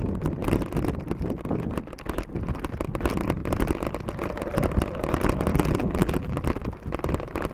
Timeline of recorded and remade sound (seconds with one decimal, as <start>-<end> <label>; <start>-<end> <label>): 0.0-5.5 recorded; 5.5-6.4 remade; 6.4-7.5 recorded